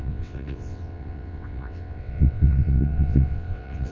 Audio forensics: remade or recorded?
remade